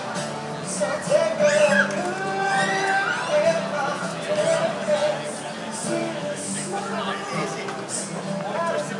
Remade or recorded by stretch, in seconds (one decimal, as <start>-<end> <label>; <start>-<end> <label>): 0.0-6.0 recorded; 6.0-6.8 remade; 6.8-9.0 recorded